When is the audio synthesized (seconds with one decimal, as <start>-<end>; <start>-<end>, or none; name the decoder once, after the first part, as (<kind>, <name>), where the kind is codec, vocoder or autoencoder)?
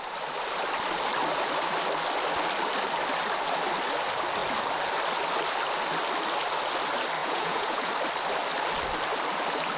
7.2-7.9 (vocoder, Vocos)